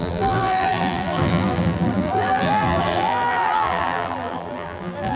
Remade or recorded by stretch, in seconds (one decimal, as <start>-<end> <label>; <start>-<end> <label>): 0.0-5.2 remade